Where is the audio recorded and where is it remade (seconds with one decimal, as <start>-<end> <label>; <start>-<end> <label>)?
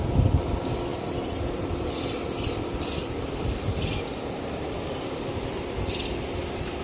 0.0-6.8 recorded